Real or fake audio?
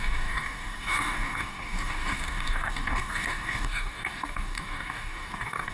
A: fake